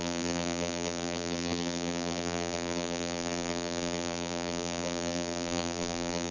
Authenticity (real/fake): fake